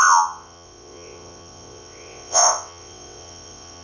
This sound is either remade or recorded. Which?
remade